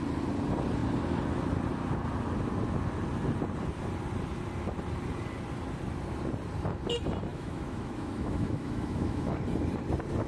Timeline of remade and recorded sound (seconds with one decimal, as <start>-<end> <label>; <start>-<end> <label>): 0.0-7.3 recorded; 7.3-9.3 remade; 9.3-10.3 recorded